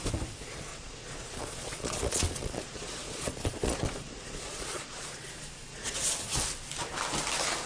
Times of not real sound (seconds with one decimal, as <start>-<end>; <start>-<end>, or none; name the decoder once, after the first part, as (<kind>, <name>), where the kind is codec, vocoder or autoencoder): 0.7-5.3 (vocoder, Vocos); 5.7-6.4